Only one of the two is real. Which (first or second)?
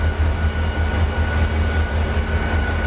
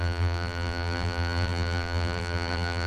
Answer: first